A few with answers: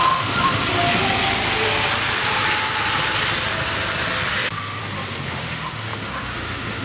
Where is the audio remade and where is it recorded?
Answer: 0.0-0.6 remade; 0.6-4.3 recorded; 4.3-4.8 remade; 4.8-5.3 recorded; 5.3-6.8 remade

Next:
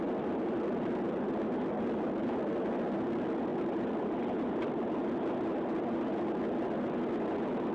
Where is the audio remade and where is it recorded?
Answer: 0.0-7.7 recorded

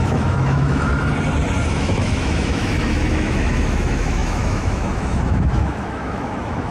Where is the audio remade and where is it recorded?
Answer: 0.0-0.9 remade; 0.9-1.7 recorded; 1.7-6.7 remade

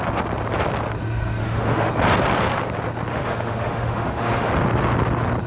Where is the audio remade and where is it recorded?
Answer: 0.0-1.4 recorded; 1.4-1.9 remade; 1.9-3.1 recorded; 3.1-4.5 remade; 4.5-5.5 recorded

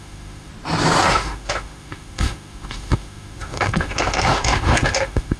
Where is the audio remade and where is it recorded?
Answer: 0.0-0.5 remade; 0.5-1.1 recorded; 1.1-5.4 remade

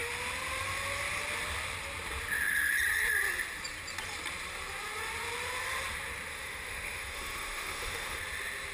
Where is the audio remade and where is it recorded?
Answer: 0.0-6.3 recorded; 6.3-8.2 remade; 8.2-8.7 recorded

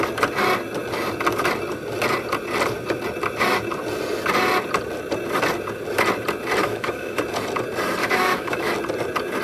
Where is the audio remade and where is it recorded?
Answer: 0.0-6.6 recorded; 6.6-7.2 remade; 7.2-8.0 recorded; 8.0-8.7 remade; 8.7-9.4 recorded

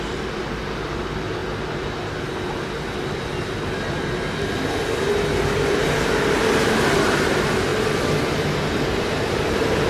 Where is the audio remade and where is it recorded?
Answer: 0.0-9.9 recorded